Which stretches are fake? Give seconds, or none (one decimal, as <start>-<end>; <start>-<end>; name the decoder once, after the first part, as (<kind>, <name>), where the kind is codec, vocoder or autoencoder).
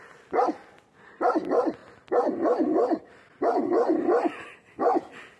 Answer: none